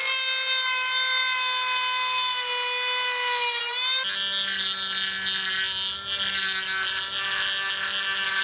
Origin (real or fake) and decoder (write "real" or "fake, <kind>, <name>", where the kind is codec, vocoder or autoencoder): real